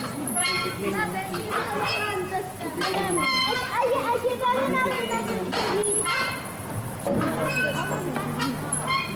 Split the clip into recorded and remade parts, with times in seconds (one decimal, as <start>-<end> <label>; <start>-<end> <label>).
0.0-0.8 recorded; 0.8-4.3 remade; 4.3-5.8 recorded; 5.8-7.3 remade; 7.3-9.2 recorded